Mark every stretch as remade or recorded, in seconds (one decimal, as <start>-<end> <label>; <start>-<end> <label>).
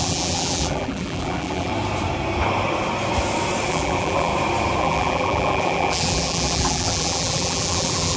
0.0-1.7 remade; 1.7-3.7 recorded; 3.7-4.3 remade; 4.3-4.8 recorded; 4.8-8.2 remade